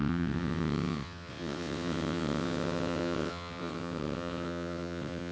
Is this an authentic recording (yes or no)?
no